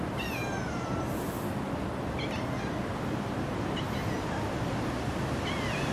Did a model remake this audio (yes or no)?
no